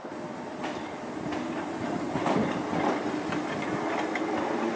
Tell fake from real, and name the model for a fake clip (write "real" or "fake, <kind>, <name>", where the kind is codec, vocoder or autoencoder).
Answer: real